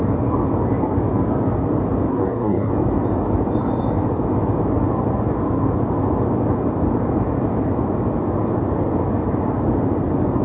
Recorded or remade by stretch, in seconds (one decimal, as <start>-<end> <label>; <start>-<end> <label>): 0.0-2.1 recorded; 2.1-2.7 remade; 2.7-10.4 recorded